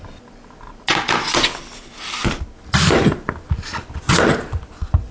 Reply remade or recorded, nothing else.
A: recorded